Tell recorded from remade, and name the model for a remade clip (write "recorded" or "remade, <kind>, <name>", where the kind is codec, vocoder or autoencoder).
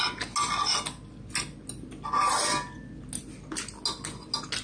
recorded